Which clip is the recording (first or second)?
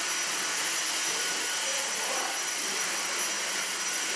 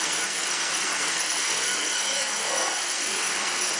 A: first